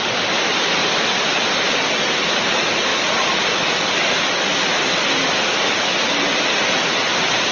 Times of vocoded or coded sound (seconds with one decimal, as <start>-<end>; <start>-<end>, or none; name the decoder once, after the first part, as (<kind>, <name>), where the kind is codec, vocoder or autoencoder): none